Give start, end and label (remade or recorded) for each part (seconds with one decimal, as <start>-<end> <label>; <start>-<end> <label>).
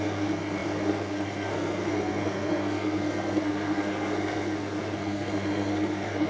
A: 0.0-6.3 remade